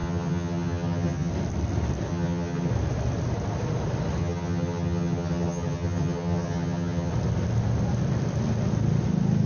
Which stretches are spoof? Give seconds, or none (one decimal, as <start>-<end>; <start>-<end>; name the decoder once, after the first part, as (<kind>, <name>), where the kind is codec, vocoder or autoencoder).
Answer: 0.0-1.3 (vocoder, HiFi-GAN); 2.1-2.7; 4.2-7.1